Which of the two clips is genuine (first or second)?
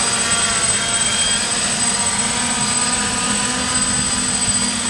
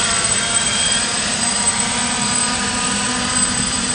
first